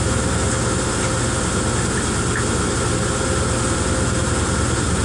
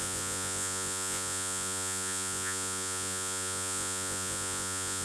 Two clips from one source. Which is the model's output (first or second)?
second